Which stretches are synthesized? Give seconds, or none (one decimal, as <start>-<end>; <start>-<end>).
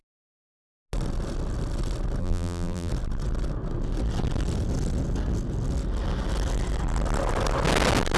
2.2-2.9